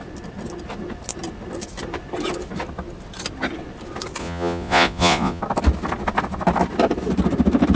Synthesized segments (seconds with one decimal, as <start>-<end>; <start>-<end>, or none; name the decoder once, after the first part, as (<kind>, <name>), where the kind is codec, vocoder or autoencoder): 4.2-5.4 (vocoder, Vocos)